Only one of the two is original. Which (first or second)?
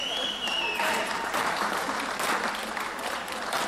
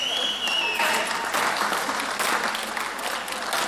second